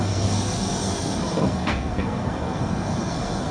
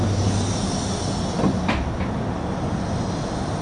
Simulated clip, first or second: first